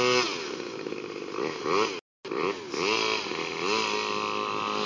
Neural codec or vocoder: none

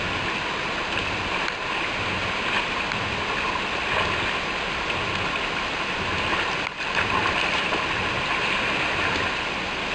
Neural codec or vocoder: none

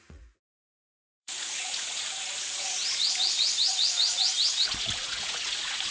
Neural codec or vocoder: vocoder, Vocos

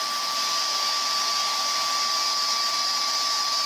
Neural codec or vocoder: none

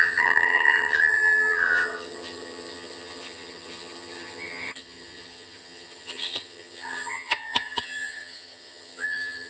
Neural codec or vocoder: vocoder, HiFi-GAN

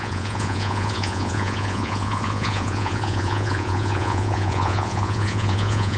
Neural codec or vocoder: vocoder, Vocos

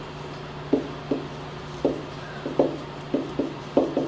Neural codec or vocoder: none